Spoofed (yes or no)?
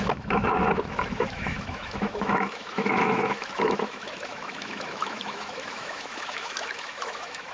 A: yes